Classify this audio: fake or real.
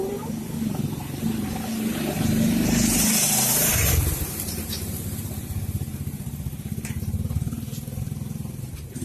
fake